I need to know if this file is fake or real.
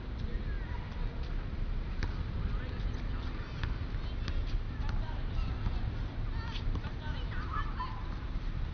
real